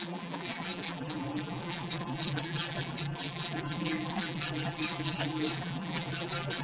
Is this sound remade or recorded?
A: remade